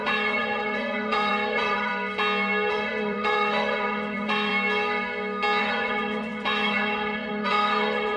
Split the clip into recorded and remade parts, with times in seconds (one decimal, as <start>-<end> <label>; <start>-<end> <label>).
0.0-1.9 remade; 1.9-2.7 recorded; 2.7-4.5 remade; 4.5-5.6 recorded; 5.6-8.2 remade